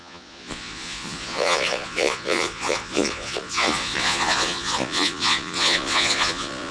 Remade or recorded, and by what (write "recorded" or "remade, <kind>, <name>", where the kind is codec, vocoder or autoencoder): remade, vocoder, Vocos